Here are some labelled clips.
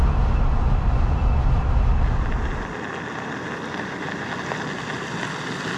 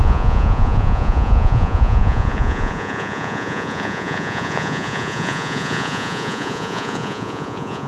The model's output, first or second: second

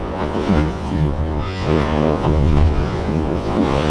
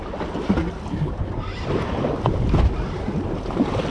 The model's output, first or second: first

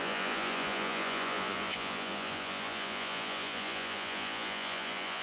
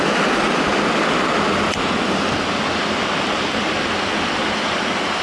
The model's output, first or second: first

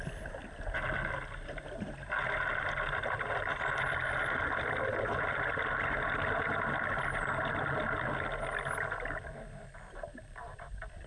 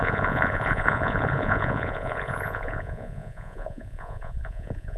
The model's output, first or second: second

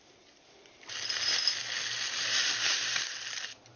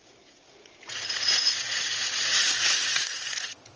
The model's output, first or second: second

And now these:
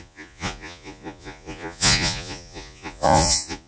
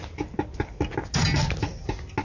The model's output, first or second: first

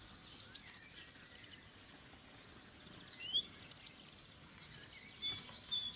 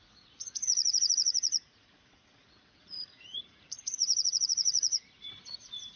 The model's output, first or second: second